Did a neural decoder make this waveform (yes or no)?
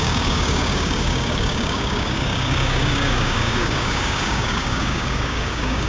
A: yes